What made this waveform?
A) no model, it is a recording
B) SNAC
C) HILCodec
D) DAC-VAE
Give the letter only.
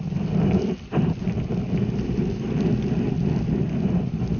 A